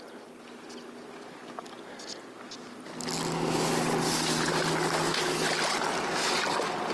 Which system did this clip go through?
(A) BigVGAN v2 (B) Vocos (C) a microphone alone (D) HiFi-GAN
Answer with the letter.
C